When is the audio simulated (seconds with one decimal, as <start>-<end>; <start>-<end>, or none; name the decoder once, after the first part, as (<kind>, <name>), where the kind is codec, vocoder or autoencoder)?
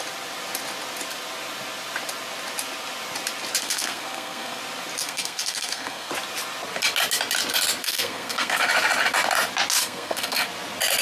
3.6-4.6 (codec, SNAC); 5.0-6.1; 7.8-8.7; 9.8-10.5